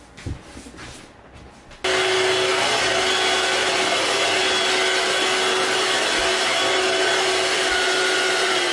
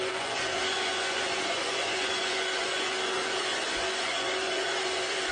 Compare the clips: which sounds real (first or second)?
first